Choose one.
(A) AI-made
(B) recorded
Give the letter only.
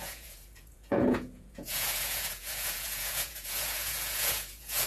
A